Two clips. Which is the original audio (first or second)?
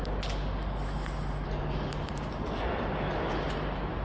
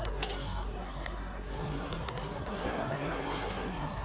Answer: first